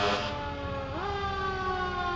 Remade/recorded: recorded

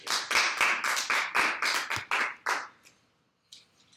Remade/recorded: recorded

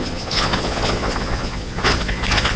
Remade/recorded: remade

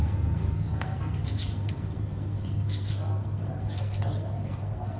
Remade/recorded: remade